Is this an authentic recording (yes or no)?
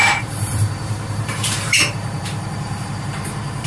no